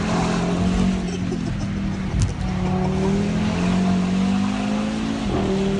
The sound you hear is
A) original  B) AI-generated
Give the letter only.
A